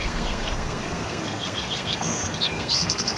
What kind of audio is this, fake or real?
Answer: fake